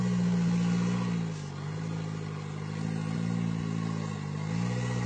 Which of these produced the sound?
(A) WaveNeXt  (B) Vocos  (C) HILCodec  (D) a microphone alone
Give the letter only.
D